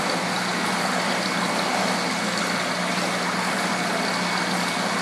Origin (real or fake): real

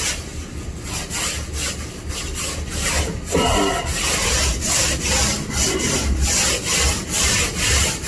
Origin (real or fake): real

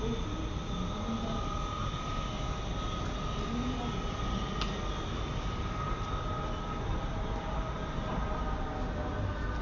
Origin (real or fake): real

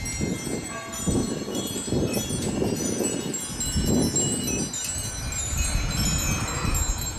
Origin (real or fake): real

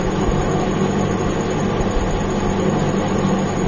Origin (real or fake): real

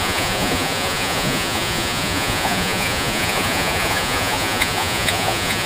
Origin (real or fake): fake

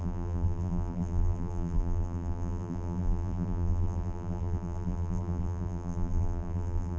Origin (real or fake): fake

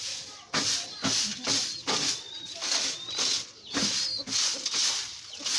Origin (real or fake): real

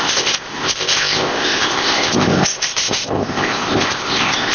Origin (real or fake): fake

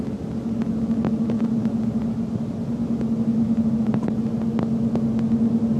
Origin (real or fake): real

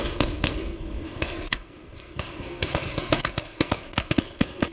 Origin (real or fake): fake